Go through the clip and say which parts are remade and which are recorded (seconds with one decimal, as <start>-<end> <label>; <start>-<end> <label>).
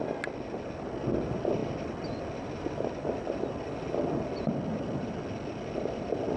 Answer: 0.0-6.4 recorded